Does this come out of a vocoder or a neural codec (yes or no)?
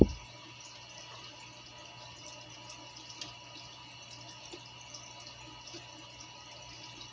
no